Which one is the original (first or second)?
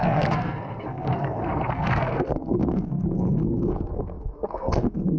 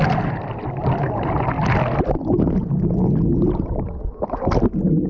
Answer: second